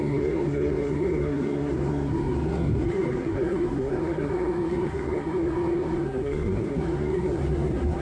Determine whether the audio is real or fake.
fake